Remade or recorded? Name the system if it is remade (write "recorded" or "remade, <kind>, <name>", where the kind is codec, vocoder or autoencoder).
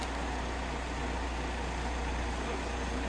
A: recorded